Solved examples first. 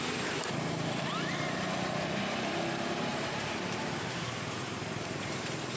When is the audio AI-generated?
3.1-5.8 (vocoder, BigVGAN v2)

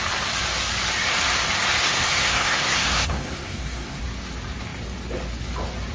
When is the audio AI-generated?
1.8-4.0 (codec, SNAC)

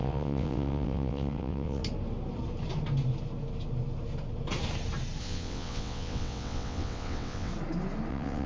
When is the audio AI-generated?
0.0-1.8 (vocoder, WaveNeXt); 5.2-7.5; 8.1-8.5

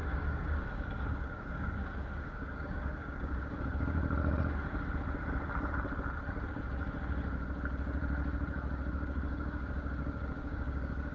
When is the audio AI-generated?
0.0-4.0 (codec, DAC); 8.9-11.1

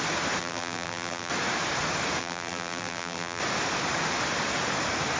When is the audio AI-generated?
0.4-1.3 (vocoder, BigVGAN v2); 2.2-3.4